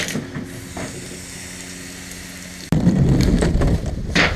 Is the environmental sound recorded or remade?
recorded